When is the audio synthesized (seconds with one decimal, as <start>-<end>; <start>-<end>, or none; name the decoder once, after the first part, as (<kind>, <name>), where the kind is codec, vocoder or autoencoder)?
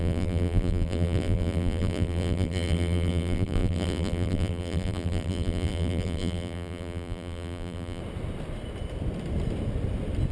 0.0-8.0 (vocoder, BigVGAN v2)